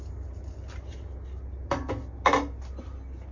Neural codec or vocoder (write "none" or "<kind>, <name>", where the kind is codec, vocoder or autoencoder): none